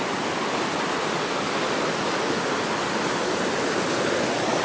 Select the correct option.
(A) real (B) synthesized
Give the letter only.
A